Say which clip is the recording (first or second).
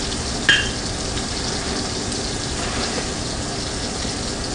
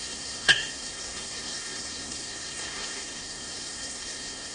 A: first